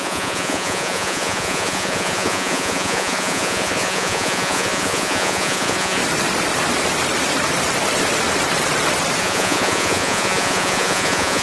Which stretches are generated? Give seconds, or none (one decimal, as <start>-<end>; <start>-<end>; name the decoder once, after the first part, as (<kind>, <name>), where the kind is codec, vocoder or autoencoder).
0.0-6.0 (vocoder, Vocos); 9.2-11.4